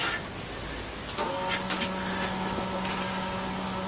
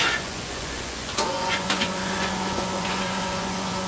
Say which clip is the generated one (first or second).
second